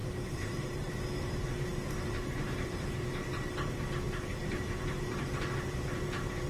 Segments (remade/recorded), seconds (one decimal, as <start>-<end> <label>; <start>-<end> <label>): 0.0-0.9 remade; 0.9-4.4 recorded; 4.4-5.2 remade; 5.2-6.5 recorded